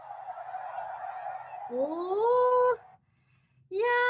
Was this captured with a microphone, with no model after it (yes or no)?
yes